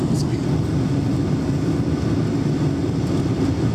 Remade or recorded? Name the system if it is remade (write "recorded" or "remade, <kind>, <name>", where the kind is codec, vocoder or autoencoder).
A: recorded